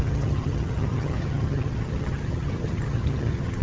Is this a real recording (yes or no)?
no